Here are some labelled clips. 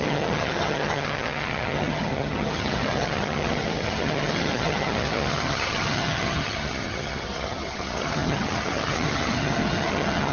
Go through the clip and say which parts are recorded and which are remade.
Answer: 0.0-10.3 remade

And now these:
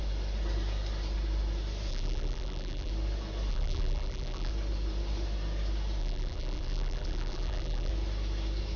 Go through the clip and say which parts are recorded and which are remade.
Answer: 0.0-1.9 recorded; 1.9-2.9 remade; 2.9-3.5 recorded; 3.5-4.5 remade; 4.5-6.0 recorded; 6.0-7.9 remade; 7.9-8.8 recorded

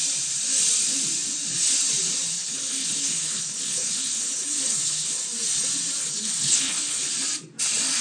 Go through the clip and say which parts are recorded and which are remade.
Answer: 0.0-2.3 recorded; 2.3-5.2 remade; 5.2-6.0 recorded; 6.0-7.1 remade; 7.1-8.0 recorded

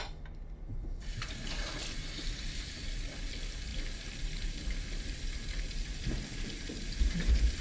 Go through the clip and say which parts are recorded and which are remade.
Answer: 0.0-7.6 recorded

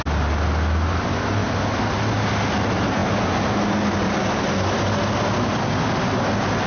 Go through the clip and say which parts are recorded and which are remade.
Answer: 0.0-6.7 recorded

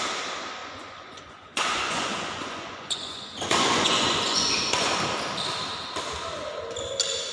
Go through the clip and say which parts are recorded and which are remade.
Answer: 0.0-0.6 recorded; 0.6-5.0 remade; 5.0-7.3 recorded